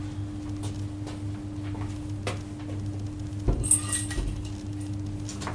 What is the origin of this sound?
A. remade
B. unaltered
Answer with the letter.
B